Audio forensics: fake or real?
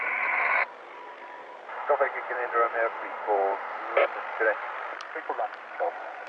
fake